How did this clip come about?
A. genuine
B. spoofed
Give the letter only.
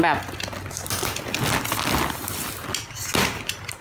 A